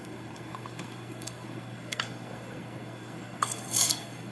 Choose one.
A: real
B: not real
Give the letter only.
B